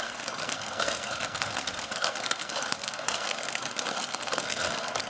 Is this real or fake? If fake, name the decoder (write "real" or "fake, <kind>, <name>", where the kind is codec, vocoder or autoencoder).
fake, codec, SNAC